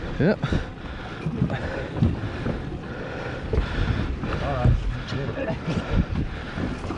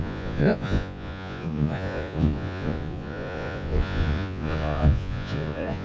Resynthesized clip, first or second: second